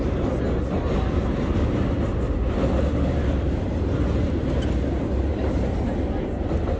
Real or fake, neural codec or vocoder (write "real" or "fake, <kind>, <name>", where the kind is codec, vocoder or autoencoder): real